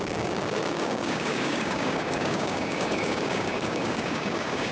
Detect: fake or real fake